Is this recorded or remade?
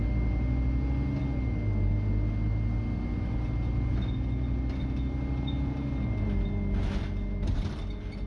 recorded